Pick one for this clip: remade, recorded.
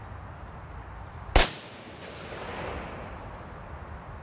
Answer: recorded